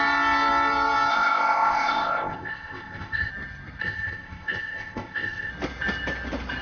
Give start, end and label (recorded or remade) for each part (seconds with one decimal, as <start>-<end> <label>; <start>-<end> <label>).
0.0-1.1 recorded; 1.1-3.3 remade; 3.3-3.8 recorded; 3.8-5.5 remade; 5.5-6.6 recorded